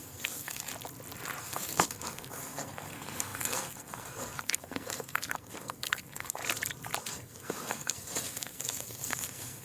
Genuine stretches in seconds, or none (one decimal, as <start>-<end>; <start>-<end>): 0.7-1.4; 6.4-7.0